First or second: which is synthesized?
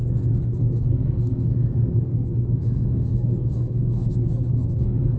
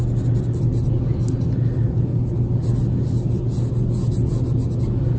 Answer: first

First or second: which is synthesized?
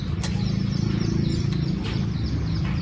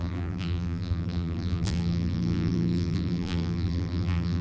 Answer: second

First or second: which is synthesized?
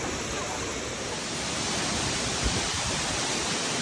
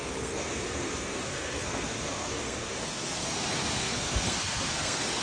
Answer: second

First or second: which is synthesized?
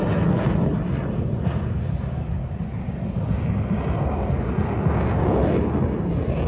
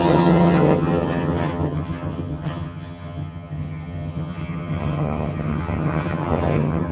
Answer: second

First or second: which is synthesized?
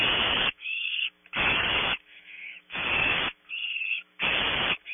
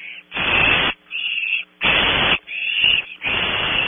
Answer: first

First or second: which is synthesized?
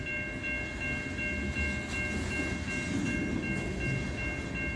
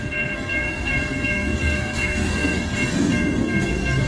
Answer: second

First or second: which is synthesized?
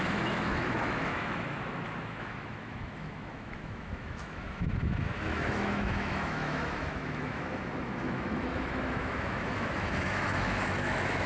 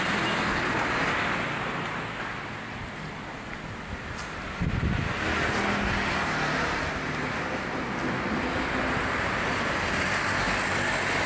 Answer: first